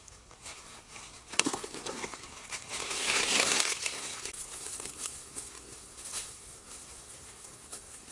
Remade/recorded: remade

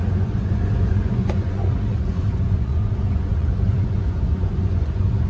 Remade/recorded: remade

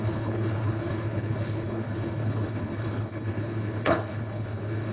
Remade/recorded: remade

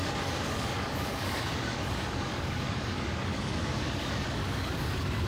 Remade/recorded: remade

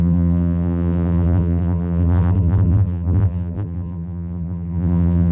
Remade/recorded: remade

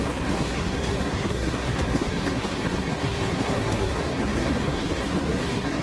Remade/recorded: remade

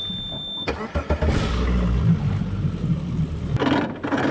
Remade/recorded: recorded